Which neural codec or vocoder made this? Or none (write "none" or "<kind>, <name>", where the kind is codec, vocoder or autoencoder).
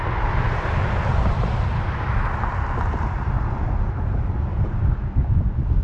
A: none